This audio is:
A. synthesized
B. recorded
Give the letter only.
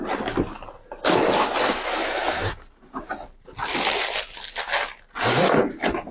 B